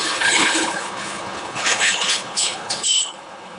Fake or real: fake